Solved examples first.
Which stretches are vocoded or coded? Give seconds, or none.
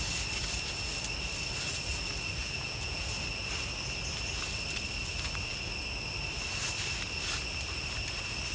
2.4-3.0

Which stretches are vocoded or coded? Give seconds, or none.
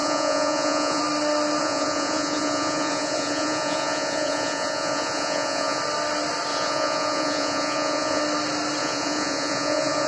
0.0-1.0; 1.6-5.8; 6.5-8.2; 8.8-10.1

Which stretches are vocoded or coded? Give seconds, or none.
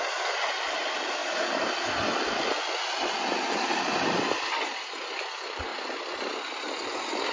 none